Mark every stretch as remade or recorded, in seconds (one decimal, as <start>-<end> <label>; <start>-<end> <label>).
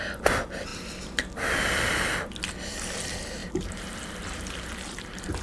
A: 0.0-3.4 recorded; 3.4-5.4 remade